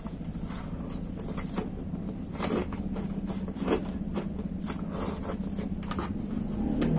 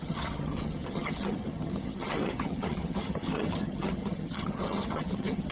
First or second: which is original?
first